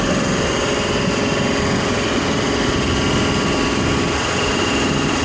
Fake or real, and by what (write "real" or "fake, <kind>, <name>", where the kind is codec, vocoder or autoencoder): real